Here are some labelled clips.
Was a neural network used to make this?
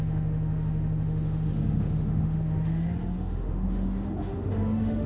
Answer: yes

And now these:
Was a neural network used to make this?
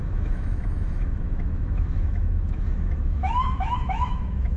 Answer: yes